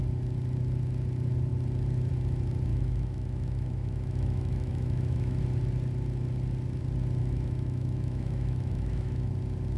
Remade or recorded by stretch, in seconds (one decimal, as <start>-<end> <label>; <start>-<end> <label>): 0.0-2.7 recorded; 2.7-5.4 remade; 5.4-7.2 recorded; 7.2-9.3 remade; 9.3-9.8 recorded